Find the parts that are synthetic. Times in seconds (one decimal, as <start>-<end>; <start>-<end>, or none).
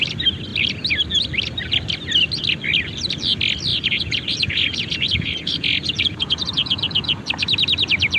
3.7-7.2